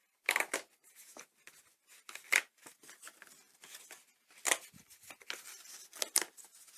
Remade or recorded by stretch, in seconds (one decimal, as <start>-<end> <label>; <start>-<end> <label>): 0.0-6.8 recorded